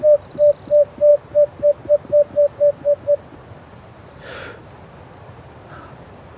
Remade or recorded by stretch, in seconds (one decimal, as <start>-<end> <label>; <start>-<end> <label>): 0.0-1.1 remade; 1.1-4.1 recorded; 4.1-6.4 remade